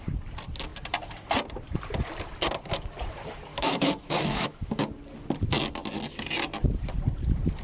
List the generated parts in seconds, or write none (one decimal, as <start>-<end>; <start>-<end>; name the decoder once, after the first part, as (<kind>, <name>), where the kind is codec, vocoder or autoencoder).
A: 3.5-4.7 (autoencoder, DAC-VAE)